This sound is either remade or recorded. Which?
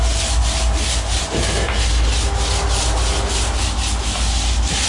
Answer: recorded